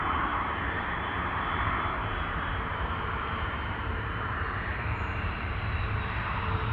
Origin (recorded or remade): remade